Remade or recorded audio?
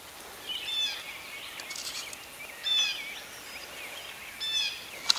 recorded